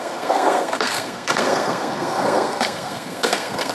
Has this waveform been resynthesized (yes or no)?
yes